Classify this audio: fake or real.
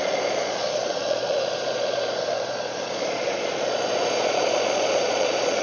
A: fake